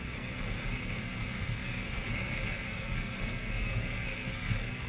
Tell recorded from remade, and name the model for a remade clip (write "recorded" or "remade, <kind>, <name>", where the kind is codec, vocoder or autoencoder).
remade, codec, SNAC